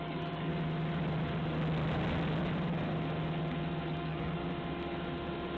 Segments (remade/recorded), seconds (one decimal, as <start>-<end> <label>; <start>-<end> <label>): 0.0-0.5 remade; 0.5-3.9 recorded; 3.9-4.4 remade; 4.4-5.6 recorded